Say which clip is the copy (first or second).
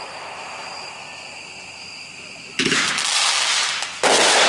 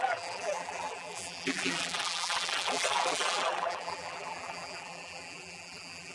second